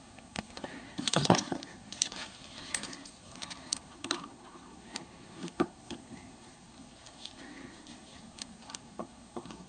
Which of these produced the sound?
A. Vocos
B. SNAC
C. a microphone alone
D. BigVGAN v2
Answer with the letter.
B